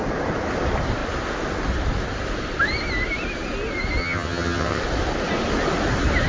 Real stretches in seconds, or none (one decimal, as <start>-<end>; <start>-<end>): 0.0-4.0; 4.8-6.3